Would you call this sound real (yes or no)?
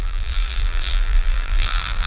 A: no